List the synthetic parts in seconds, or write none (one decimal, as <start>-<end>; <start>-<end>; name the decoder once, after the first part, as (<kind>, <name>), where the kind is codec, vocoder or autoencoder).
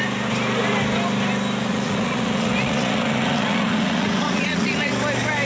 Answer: 1.7-4.9 (vocoder, Vocos)